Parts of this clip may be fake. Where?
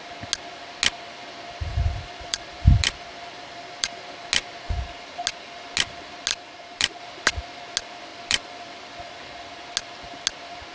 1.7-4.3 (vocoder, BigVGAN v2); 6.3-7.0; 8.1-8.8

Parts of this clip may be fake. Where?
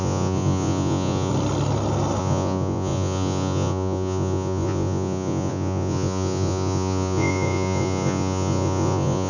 0.0-1.3 (vocoder, Vocos); 2.2-9.3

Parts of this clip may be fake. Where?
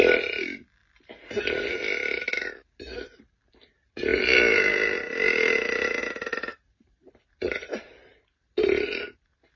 6.5-9.6 (vocoder, BigVGAN v2)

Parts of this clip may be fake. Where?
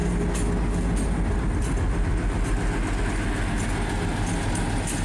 none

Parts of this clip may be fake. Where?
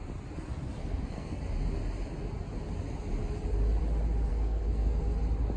0.8-1.4 (codec, SNAC); 4.3-5.0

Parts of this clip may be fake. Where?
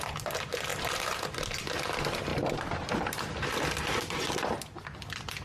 0.7-1.7 (vocoder, BigVGAN v2); 2.3-3.6